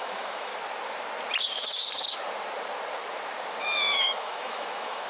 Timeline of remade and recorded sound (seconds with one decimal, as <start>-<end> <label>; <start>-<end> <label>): 0.0-0.5 remade; 0.5-3.6 recorded; 3.6-5.1 remade